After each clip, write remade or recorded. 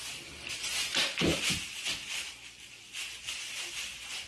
recorded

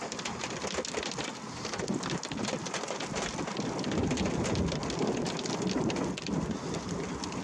recorded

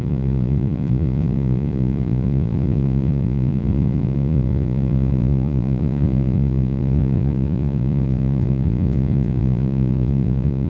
remade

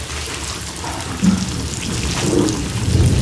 recorded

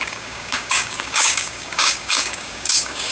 remade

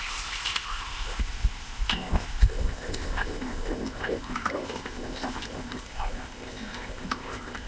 remade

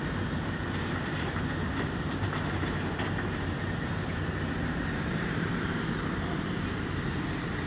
remade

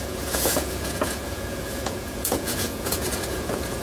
remade